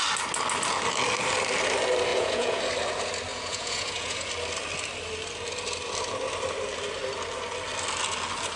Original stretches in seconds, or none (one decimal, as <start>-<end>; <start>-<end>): 0.0-2.1; 2.6-3.3; 4.3-8.6